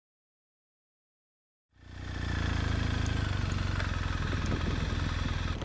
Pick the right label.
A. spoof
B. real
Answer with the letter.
B